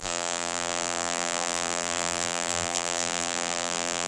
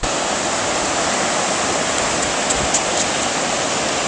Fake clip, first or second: first